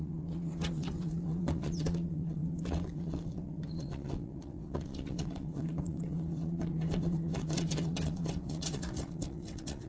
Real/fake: fake